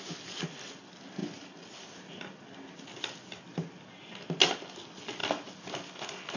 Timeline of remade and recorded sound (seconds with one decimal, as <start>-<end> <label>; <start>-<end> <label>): 0.0-6.4 recorded